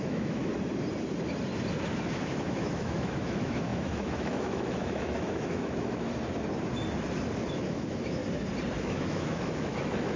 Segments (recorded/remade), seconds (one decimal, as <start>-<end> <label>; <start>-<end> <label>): 0.0-0.5 remade; 0.5-1.9 recorded; 1.9-6.1 remade; 6.1-7.5 recorded; 7.5-8.2 remade; 8.2-8.8 recorded; 8.8-10.2 remade